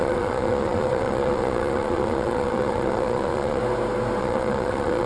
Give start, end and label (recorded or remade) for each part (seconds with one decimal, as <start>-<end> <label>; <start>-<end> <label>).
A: 0.0-3.6 remade; 3.6-4.2 recorded; 4.2-5.1 remade